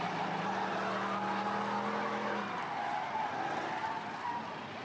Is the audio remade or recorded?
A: recorded